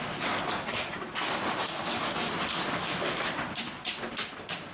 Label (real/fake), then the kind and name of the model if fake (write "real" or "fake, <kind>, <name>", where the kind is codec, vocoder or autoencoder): real